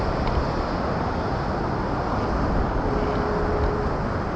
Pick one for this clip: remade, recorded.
recorded